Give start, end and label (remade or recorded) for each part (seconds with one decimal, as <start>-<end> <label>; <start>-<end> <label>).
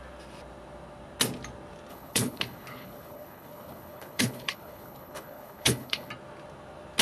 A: 0.0-1.9 recorded; 1.9-6.1 remade; 6.1-7.0 recorded